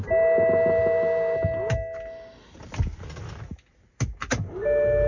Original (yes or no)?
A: yes